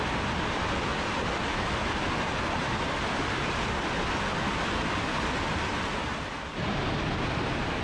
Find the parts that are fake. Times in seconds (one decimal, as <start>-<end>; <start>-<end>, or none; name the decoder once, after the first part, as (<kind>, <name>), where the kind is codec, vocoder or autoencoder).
none